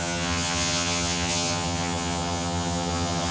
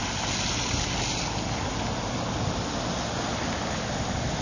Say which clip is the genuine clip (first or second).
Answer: second